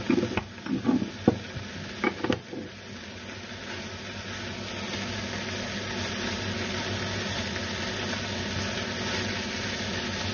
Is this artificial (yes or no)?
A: no